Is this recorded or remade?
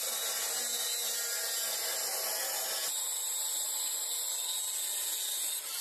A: recorded